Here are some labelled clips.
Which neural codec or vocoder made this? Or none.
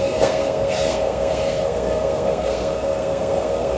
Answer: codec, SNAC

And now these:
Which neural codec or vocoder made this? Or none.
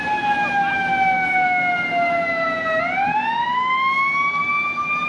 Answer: none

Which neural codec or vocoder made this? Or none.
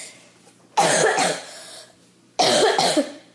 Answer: none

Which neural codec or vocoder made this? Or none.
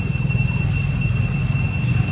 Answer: none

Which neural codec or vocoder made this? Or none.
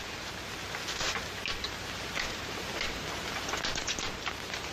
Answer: none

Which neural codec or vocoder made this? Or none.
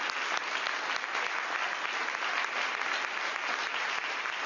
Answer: none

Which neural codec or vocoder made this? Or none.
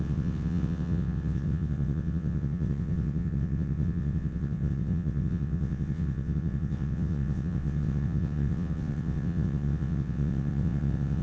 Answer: vocoder, WaveNeXt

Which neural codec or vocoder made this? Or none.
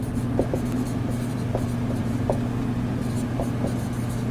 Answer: none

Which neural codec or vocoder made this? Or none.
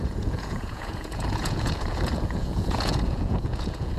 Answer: vocoder, Vocos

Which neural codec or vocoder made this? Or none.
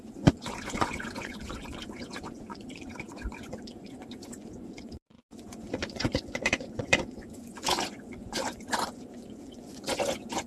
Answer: vocoder, Vocos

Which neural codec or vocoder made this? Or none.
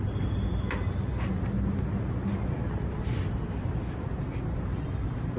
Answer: none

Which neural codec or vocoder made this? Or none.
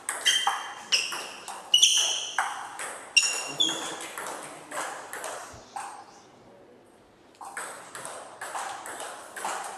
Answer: none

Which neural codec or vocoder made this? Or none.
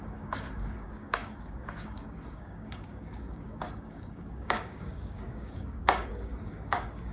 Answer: codec, DAC